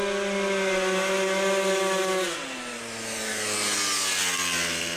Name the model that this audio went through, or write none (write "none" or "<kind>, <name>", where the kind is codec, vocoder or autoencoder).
none